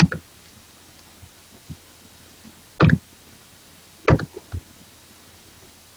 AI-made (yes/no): no